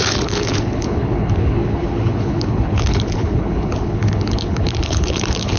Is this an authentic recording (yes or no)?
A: no